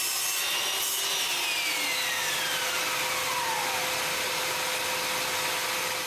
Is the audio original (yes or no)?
yes